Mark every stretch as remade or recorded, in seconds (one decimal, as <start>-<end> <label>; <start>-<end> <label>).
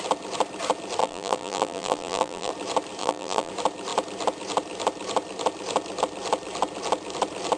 0.0-1.0 recorded; 1.0-2.5 remade; 2.5-3.0 recorded; 3.0-3.5 remade; 3.5-7.6 recorded